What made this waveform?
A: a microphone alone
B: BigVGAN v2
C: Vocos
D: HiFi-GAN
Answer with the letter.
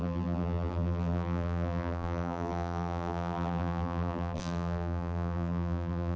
B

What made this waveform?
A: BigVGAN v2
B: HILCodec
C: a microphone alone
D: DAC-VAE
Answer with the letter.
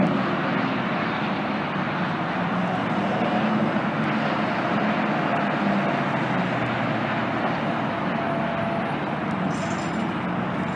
C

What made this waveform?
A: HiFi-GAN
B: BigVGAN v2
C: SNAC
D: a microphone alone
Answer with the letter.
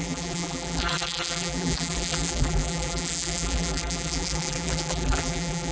B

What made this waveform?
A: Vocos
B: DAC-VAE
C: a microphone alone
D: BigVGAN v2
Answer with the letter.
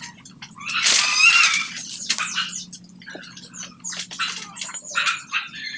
C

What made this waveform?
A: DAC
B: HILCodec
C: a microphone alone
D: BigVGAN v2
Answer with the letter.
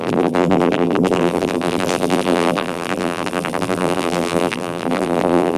D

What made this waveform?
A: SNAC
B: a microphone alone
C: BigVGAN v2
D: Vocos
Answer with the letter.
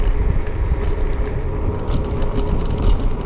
B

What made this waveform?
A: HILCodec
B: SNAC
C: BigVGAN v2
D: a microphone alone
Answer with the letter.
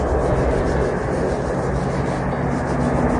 D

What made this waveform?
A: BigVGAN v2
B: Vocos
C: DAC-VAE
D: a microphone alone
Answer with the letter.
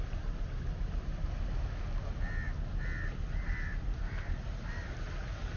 D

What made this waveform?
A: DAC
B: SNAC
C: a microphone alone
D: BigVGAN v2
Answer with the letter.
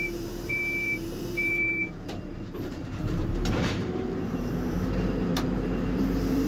D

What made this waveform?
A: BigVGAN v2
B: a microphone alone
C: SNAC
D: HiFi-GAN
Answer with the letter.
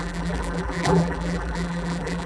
A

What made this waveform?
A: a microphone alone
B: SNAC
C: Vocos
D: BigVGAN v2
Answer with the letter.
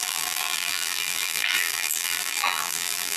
D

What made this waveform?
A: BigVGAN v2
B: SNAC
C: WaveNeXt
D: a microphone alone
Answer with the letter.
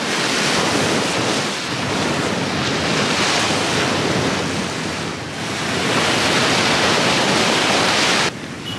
D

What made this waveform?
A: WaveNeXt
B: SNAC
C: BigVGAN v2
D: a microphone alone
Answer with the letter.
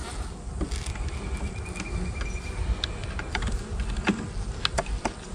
D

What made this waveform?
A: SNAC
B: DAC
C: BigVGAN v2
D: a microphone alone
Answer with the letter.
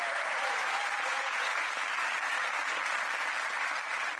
C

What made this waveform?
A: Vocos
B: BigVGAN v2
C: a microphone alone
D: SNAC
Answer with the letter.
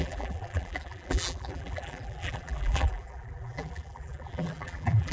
B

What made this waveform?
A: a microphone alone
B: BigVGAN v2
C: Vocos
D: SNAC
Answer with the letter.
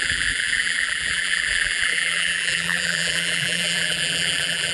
B